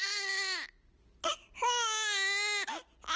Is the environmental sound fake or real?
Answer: real